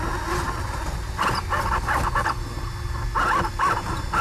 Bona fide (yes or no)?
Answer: yes